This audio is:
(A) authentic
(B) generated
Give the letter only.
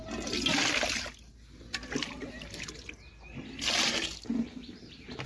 A